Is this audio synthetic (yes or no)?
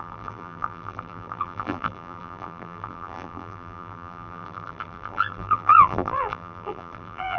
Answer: yes